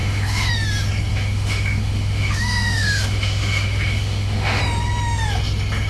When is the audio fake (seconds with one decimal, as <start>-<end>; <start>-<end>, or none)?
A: 0.0-0.5; 1.1-4.6